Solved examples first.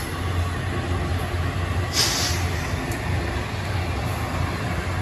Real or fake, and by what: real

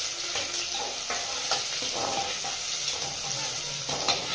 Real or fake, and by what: real